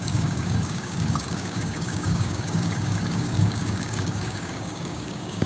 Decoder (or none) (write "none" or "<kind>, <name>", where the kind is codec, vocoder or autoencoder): codec, DAC